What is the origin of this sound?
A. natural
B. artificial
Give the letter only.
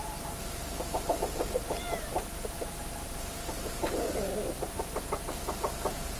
A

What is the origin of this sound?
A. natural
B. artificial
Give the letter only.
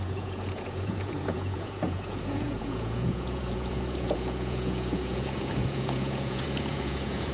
B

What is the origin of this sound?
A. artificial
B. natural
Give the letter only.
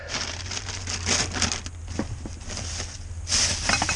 B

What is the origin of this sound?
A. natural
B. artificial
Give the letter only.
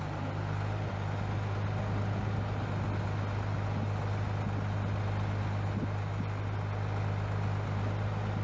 A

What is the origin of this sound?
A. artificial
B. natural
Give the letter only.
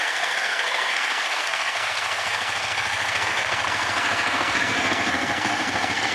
A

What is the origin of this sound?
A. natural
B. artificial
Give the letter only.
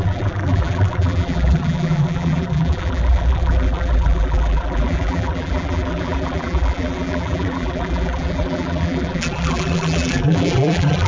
B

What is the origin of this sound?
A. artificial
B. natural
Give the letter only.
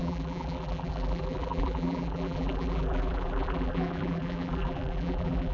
A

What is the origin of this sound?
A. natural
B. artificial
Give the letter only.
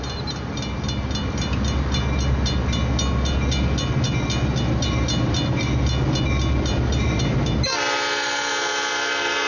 A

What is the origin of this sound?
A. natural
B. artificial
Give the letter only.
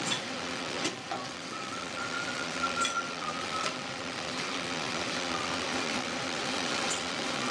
B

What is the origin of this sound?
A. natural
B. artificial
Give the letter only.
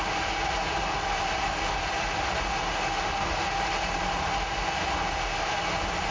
A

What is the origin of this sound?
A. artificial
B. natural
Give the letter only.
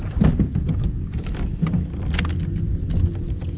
B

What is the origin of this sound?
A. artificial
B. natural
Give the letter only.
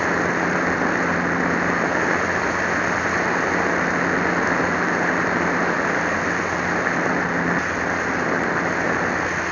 B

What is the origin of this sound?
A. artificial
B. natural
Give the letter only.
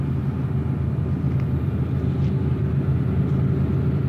B